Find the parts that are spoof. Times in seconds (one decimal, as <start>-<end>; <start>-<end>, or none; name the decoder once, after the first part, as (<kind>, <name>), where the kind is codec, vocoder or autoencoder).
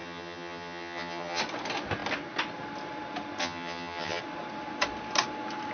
0.0-1.4 (vocoder, HiFi-GAN); 3.4-4.2